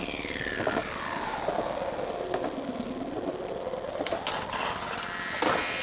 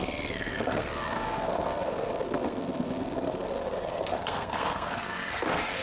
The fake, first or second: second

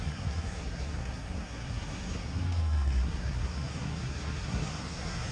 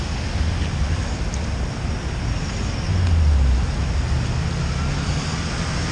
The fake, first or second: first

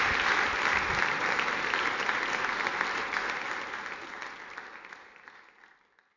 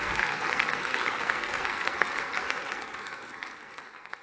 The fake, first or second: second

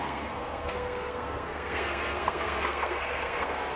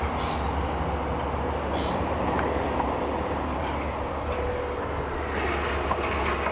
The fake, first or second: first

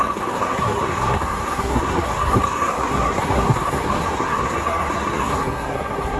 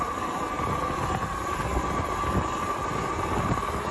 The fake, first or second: first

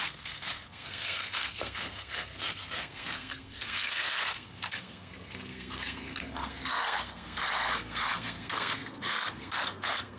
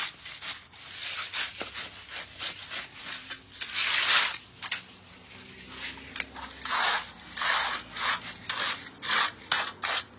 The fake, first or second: first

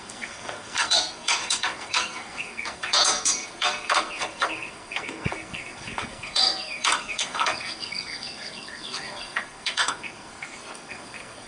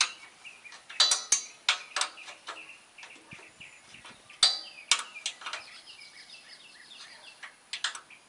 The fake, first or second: first